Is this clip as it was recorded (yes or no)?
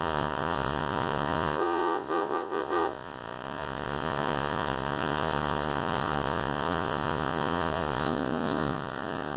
no